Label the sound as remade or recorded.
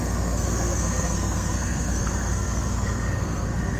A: remade